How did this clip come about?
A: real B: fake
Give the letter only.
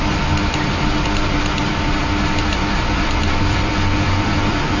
B